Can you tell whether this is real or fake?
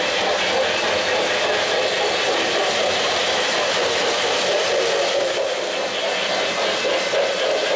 real